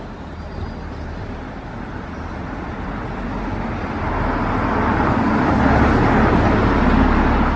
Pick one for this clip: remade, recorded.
recorded